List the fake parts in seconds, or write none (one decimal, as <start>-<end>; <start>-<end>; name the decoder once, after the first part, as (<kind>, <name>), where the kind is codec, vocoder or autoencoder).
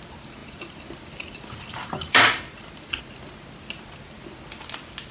0.4-3.0 (vocoder, BigVGAN v2)